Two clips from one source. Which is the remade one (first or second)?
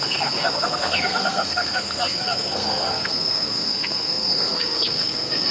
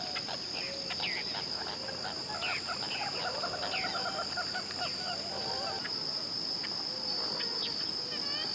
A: first